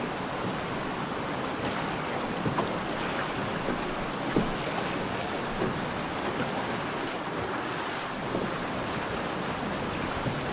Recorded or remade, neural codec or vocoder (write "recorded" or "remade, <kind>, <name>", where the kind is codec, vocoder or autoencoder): recorded